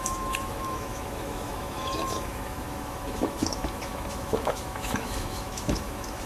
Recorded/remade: remade